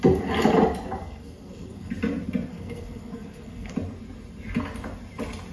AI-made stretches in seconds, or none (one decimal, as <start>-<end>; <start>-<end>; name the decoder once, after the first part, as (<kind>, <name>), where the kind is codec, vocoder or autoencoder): 1.0-1.9 (codec, SNAC); 2.5-3.7